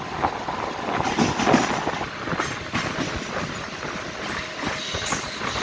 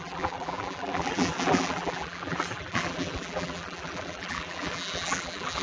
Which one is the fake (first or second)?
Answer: second